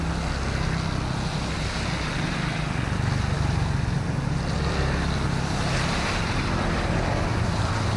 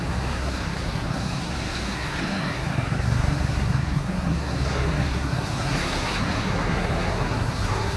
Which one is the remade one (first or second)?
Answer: second